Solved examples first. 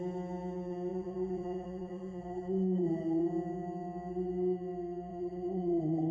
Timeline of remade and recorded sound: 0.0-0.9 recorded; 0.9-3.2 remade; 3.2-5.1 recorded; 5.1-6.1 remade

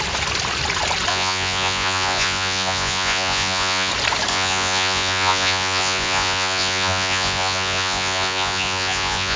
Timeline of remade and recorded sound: 0.0-1.1 recorded; 1.1-3.9 remade; 3.9-4.3 recorded; 4.3-9.4 remade

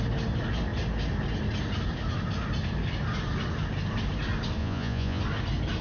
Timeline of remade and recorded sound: 0.0-4.6 recorded; 4.6-5.2 remade; 5.2-5.8 recorded

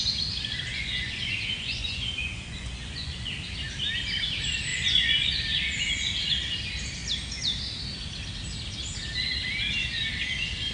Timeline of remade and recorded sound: 0.0-0.7 recorded; 0.7-3.3 remade; 3.3-4.7 recorded; 4.7-5.3 remade; 5.3-10.7 recorded

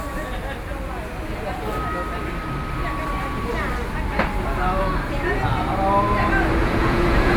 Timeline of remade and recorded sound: 0.0-6.6 recorded; 6.6-7.4 remade

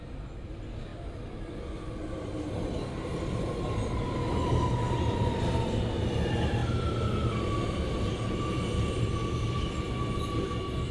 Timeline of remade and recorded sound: 0.0-10.9 recorded

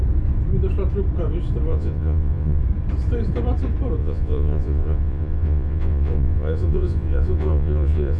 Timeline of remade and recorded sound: 0.0-1.7 recorded; 1.7-2.6 remade; 2.6-4.0 recorded; 4.0-8.2 remade

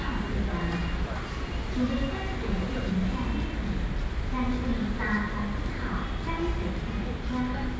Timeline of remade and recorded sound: 0.0-7.8 recorded